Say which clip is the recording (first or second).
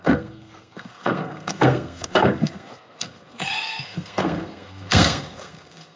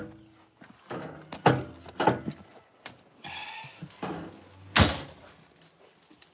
second